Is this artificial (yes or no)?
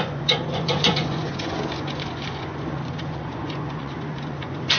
yes